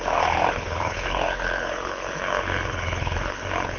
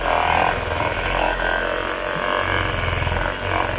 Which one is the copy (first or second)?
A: first